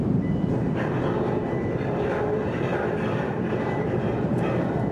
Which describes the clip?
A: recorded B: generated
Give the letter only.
B